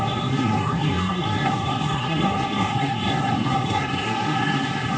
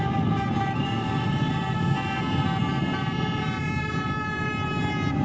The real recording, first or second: second